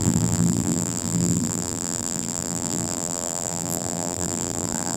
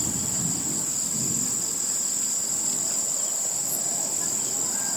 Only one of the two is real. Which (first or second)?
second